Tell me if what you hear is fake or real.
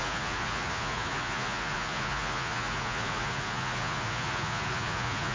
fake